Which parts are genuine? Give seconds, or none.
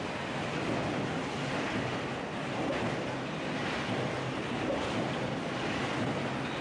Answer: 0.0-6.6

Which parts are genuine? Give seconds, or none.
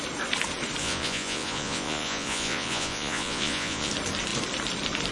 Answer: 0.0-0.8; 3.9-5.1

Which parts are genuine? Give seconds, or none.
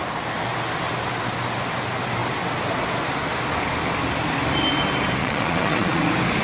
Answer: 0.0-5.2; 6.0-6.4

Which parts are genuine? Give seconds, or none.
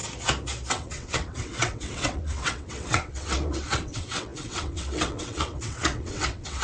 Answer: 0.0-0.7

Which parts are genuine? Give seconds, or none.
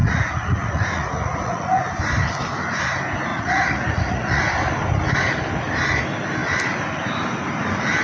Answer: 1.8-3.3; 4.4-8.0